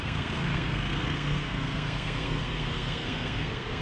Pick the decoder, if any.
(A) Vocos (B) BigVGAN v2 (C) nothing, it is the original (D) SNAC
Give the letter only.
D